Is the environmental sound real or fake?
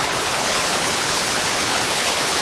fake